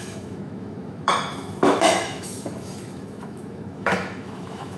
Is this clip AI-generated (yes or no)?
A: yes